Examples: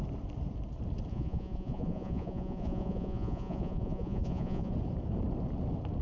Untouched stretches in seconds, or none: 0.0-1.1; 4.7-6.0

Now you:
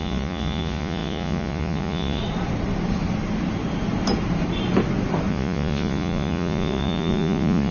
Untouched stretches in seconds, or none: 2.2-5.3

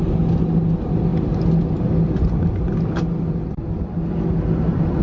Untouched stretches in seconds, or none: 0.0-5.0

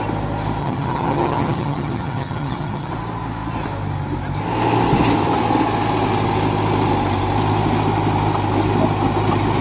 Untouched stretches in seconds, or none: 0.0-0.6; 2.9-9.6

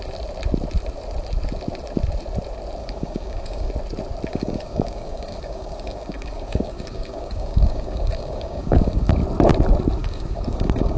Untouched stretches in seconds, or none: 0.0-2.8; 3.7-4.3; 9.1-10.0

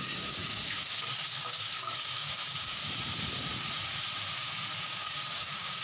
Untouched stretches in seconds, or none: 2.8-4.8

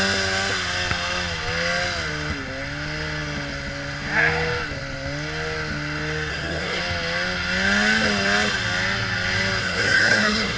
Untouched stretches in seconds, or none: 0.0-6.3; 6.8-9.6